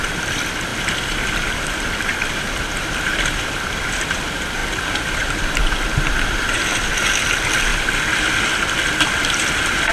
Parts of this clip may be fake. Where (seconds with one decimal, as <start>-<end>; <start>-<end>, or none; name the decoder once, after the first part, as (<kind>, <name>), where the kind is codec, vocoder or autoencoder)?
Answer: 0.0-7.7 (vocoder, BigVGAN v2); 8.7-9.9